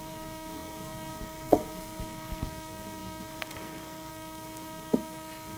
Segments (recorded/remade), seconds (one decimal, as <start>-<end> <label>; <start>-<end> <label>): 0.0-5.6 remade